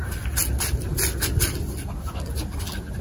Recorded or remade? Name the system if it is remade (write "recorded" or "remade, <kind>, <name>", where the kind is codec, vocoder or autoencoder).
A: recorded